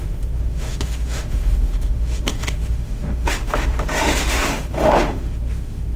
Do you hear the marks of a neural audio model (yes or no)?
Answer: yes